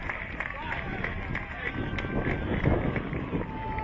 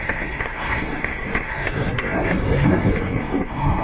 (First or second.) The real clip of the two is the first